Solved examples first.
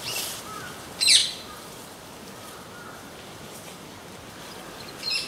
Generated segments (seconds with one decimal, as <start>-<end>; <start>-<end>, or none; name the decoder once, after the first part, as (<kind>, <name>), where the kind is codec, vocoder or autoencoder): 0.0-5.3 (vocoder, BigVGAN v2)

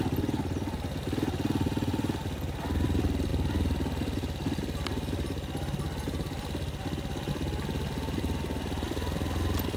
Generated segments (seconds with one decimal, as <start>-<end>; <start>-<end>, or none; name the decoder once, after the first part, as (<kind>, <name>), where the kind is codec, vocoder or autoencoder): 1.9-2.6 (vocoder, BigVGAN v2)

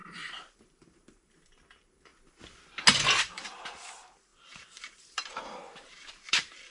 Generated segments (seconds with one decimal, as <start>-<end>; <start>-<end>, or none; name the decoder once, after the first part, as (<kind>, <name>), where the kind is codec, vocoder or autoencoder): 0.0-2.1 (vocoder, BigVGAN v2); 3.2-6.7